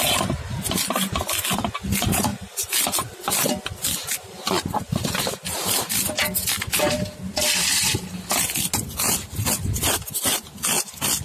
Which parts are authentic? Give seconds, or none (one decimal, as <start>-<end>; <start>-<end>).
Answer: 0.0-11.2